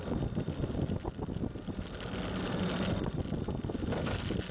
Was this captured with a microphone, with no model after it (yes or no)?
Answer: yes